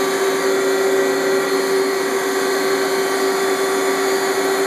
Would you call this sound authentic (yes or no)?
yes